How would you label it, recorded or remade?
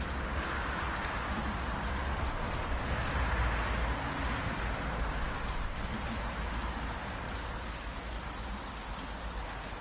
recorded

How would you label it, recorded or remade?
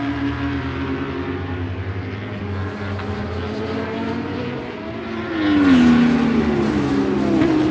recorded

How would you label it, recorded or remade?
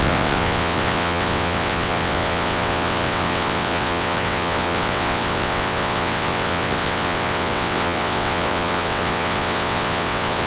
remade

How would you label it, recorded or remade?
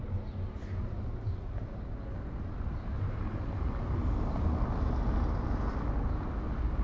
recorded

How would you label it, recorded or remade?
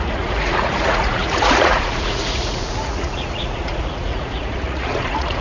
remade